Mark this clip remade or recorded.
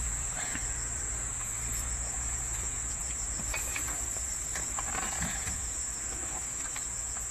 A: remade